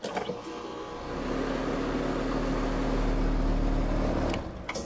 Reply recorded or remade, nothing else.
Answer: recorded